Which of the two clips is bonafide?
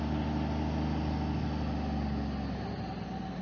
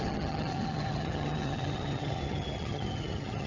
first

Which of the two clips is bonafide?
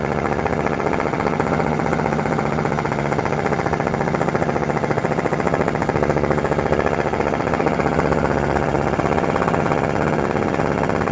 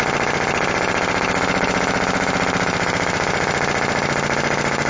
second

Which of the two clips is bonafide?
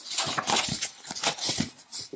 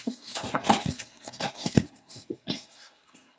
first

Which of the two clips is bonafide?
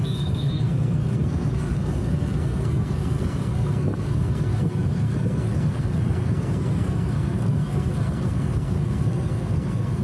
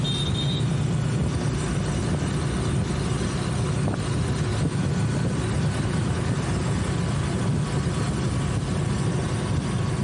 second